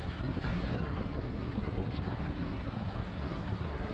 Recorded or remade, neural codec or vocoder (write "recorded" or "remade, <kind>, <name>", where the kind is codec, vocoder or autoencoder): remade, codec, SNAC